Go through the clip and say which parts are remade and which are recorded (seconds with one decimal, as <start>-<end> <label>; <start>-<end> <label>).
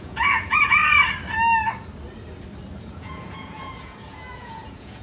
0.0-0.8 remade; 0.8-2.8 recorded; 2.8-5.0 remade